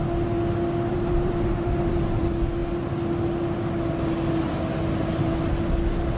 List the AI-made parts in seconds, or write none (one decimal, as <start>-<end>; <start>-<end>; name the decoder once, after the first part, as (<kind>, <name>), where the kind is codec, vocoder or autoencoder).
0.9-2.2 (vocoder, BigVGAN v2)